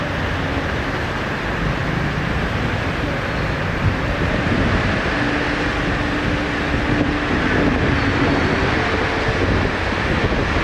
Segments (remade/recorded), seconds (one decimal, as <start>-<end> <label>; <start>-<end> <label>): 0.0-1.8 recorded; 1.8-5.0 remade; 5.0-10.6 recorded